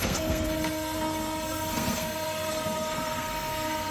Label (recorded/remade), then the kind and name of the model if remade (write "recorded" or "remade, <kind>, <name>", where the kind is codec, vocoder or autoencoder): remade, codec, SNAC